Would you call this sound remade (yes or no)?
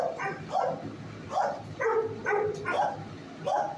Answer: no